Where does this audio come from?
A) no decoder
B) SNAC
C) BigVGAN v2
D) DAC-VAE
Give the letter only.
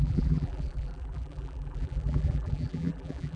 C